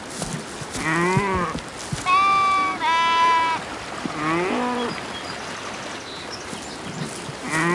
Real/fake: real